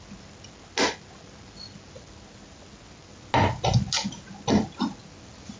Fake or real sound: real